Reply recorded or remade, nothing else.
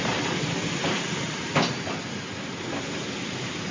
recorded